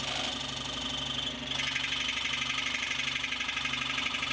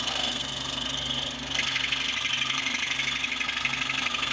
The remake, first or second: second